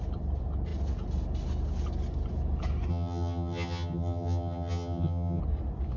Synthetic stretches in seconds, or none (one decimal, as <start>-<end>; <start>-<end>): 2.9-5.4